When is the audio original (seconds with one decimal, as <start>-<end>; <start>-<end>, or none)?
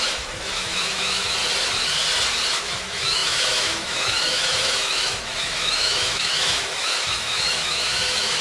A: 1.4-2.6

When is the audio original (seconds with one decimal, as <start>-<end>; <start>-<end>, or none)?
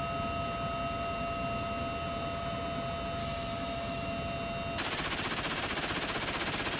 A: 0.0-3.2; 4.1-6.8